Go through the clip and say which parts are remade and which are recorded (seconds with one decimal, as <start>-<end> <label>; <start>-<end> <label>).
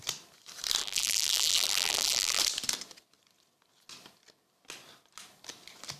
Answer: 0.0-0.8 recorded; 0.8-2.4 remade; 2.4-6.0 recorded